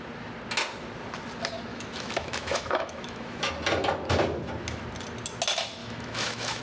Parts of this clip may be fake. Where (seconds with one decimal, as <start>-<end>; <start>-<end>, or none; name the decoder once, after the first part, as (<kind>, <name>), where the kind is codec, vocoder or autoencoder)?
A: 1.7-3.5 (autoencoder, DAC-VAE); 5.8-6.6